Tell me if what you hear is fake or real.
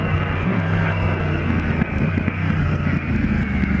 fake